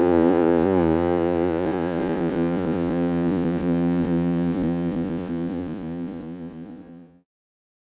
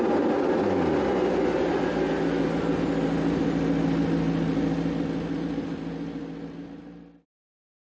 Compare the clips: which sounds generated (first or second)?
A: first